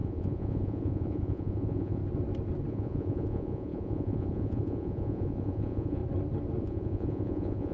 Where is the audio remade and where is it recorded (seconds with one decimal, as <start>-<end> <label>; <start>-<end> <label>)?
0.0-2.0 remade; 2.0-2.7 recorded; 2.7-6.0 remade; 6.0-6.6 recorded; 6.6-7.7 remade